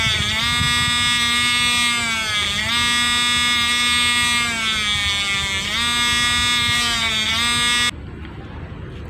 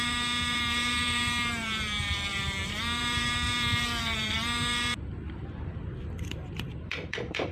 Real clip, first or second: first